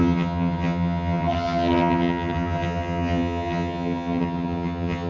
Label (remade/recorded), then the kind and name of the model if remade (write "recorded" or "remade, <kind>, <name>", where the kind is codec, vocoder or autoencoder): remade, vocoder, HiFi-GAN